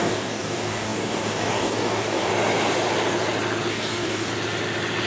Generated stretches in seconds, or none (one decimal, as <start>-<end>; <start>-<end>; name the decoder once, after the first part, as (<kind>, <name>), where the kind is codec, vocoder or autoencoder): 0.0-2.3 (codec, DAC); 3.7-4.3